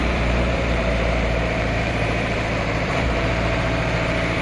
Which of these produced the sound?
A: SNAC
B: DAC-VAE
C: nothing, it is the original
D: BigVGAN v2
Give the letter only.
D